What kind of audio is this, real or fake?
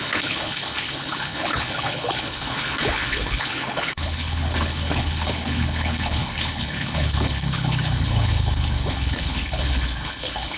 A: fake